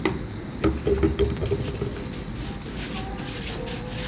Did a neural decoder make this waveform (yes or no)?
no